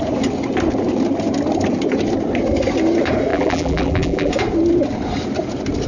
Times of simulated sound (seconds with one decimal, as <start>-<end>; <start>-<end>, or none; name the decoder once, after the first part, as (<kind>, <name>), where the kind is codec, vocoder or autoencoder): 3.3-4.3 (vocoder, BigVGAN v2)